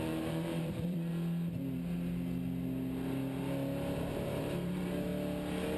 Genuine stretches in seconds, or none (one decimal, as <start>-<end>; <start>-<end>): 1.1-4.1; 5.1-5.8